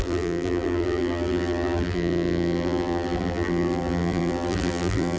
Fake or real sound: fake